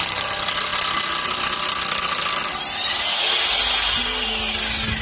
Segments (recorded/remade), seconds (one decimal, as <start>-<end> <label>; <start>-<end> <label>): 0.0-5.0 recorded